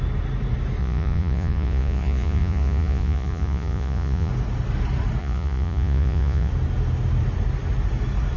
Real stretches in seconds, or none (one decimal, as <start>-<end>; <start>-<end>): 0.0-0.8; 4.3-5.2; 6.5-8.4